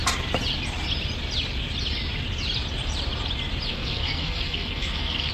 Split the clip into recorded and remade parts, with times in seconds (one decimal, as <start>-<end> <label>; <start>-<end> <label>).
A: 0.0-3.7 recorded; 3.7-5.3 remade